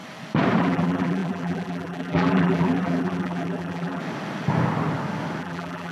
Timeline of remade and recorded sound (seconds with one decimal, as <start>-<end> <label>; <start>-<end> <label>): 0.0-0.6 recorded; 0.6-4.0 remade; 4.0-5.4 recorded; 5.4-5.9 remade